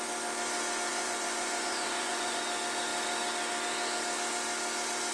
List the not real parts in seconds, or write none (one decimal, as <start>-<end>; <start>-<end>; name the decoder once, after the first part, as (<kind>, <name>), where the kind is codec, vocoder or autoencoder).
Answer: 0.9-2.4 (vocoder, Vocos)